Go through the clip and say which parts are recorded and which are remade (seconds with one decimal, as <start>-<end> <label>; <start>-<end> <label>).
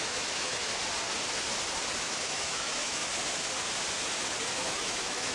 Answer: 0.0-0.7 remade; 0.7-2.0 recorded; 2.0-3.0 remade; 3.0-4.6 recorded; 4.6-5.3 remade